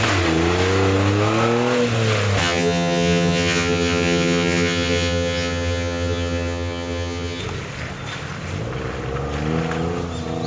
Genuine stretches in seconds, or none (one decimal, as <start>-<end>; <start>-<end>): 0.0-2.4; 7.4-10.5